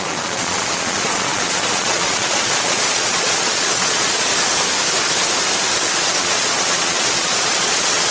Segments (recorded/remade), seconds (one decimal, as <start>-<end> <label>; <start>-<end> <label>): 0.0-4.3 remade; 4.3-6.2 recorded; 6.2-8.1 remade